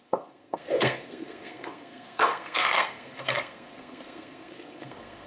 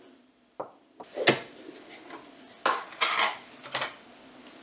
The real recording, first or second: second